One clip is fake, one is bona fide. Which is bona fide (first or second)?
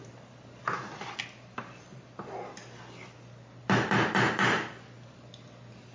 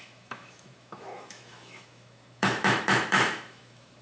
first